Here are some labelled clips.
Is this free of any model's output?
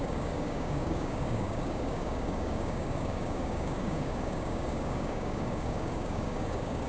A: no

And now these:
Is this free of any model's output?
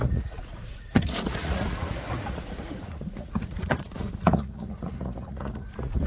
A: no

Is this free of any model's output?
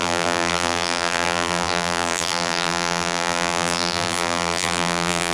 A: no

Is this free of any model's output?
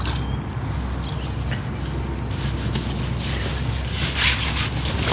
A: yes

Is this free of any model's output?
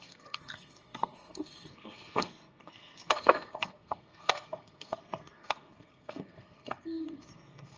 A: no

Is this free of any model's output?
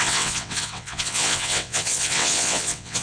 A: no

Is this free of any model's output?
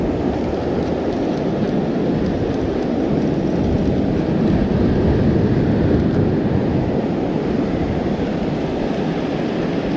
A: yes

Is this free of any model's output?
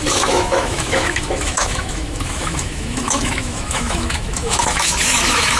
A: no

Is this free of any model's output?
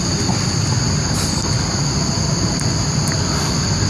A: yes